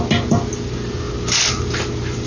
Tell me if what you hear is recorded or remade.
recorded